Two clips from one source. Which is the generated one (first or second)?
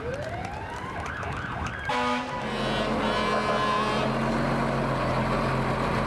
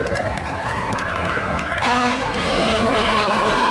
second